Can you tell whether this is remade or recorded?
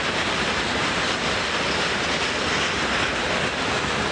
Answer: recorded